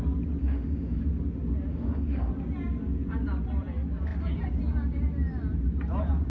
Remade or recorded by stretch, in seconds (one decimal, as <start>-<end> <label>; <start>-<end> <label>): 0.0-0.4 recorded; 0.4-1.0 remade; 1.0-1.7 recorded; 1.7-2.3 remade; 2.3-6.3 recorded